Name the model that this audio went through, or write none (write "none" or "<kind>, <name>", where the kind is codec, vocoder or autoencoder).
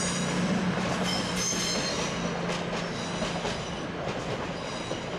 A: none